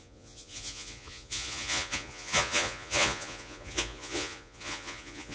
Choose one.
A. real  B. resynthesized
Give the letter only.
B